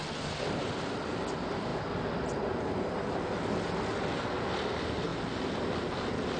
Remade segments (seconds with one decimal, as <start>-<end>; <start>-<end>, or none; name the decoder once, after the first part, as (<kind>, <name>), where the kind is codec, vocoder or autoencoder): none